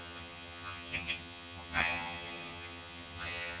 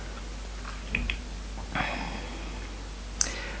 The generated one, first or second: first